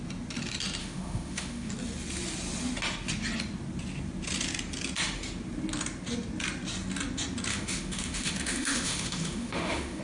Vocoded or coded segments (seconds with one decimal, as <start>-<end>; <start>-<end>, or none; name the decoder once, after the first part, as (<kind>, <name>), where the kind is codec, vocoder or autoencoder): 0.8-1.7 (autoencoder, DAC-VAE); 7.5-10.0